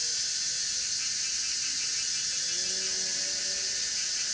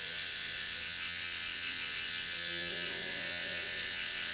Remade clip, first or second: second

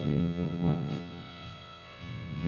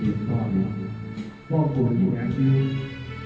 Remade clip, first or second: first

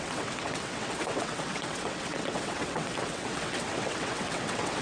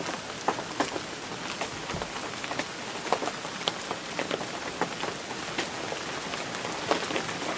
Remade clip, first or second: first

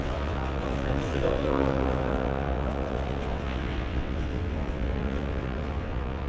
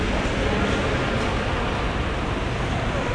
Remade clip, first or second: first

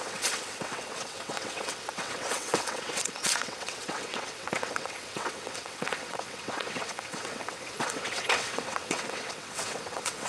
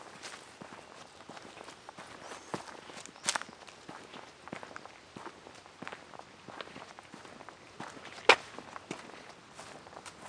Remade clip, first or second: first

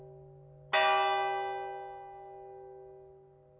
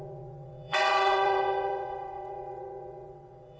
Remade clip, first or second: second